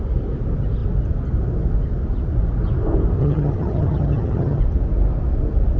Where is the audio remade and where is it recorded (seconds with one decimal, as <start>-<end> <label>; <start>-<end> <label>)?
0.0-3.2 recorded; 3.2-4.6 remade; 4.6-5.8 recorded